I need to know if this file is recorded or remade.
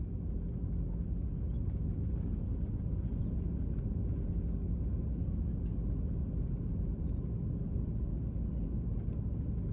recorded